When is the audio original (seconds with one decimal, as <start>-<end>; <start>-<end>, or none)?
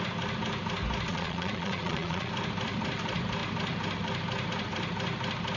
0.0-1.1; 2.3-5.6